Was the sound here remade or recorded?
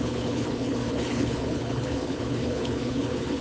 remade